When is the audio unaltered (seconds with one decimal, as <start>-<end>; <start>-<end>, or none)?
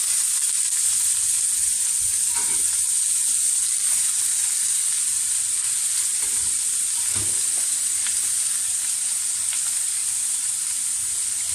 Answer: 10.0-10.7